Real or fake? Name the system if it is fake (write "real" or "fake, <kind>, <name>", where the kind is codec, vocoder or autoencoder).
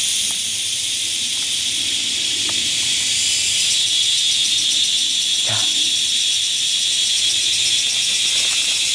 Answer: real